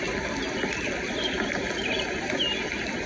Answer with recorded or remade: recorded